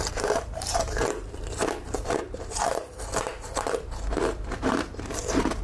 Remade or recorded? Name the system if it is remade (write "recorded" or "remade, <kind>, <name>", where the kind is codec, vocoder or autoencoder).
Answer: remade, vocoder, BigVGAN v2